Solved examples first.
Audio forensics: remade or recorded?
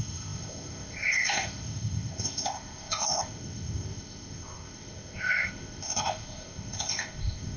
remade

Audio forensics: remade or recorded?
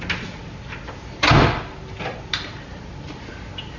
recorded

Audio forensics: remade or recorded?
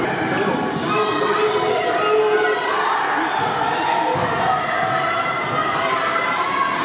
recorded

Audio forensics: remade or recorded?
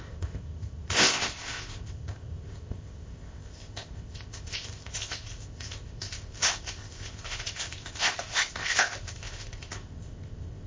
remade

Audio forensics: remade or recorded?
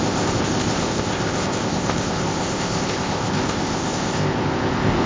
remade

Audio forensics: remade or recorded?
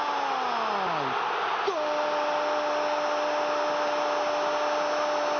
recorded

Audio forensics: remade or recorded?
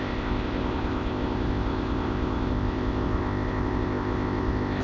remade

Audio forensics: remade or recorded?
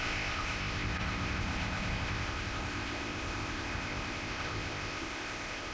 remade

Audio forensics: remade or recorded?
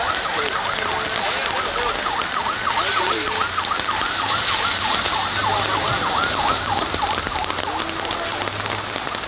recorded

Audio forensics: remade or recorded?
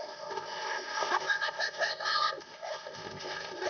remade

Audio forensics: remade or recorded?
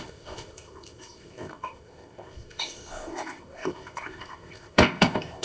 remade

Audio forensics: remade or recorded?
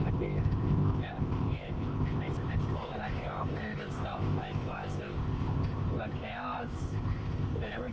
remade